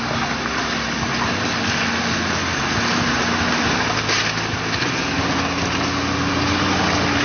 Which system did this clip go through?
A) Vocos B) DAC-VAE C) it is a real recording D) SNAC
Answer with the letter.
C